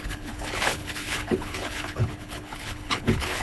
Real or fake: fake